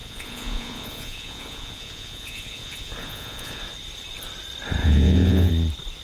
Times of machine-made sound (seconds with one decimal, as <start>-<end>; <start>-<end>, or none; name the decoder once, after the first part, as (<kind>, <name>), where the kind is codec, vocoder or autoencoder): 0.0-3.6 (vocoder, Vocos); 4.8-5.5